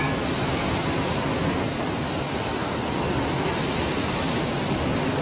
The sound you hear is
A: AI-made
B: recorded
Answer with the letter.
A